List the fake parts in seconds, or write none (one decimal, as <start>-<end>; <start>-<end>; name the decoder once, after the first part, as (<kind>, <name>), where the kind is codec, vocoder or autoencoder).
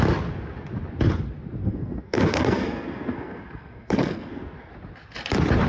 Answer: 1.6-4.7 (codec, SNAC)